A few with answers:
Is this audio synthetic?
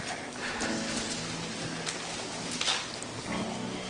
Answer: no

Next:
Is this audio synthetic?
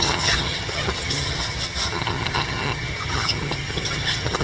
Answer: yes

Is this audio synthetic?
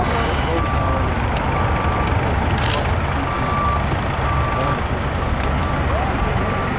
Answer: no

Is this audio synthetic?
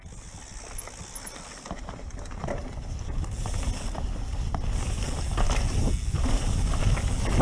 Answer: no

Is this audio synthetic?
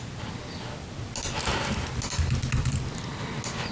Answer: no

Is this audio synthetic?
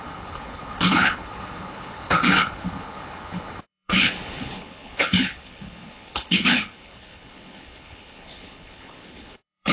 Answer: yes